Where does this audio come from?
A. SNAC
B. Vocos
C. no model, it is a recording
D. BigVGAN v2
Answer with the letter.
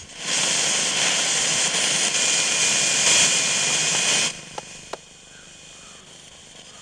C